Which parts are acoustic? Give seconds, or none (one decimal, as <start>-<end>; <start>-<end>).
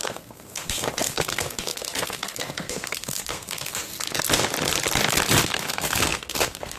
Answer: 3.9-5.4